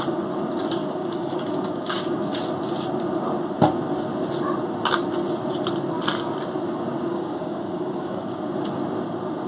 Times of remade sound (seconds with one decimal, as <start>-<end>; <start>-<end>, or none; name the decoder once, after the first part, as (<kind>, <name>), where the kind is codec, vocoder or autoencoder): 0.8-2.4 (codec, DAC); 7.1-8.4